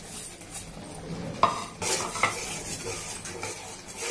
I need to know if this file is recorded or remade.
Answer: recorded